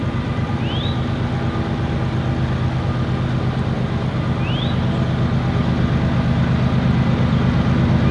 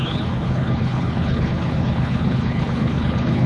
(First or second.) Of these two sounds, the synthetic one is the second